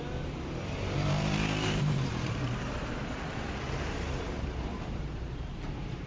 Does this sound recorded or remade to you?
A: remade